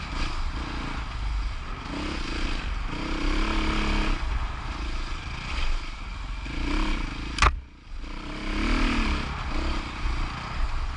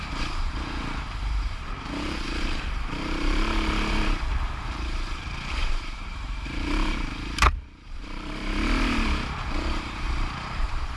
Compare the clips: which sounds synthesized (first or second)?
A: second